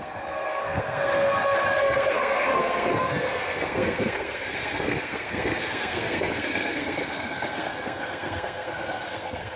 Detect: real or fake fake